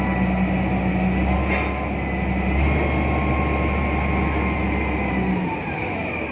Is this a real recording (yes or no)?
yes